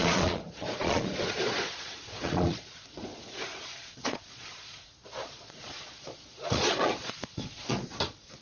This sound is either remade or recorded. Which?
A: remade